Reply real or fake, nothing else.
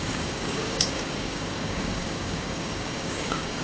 fake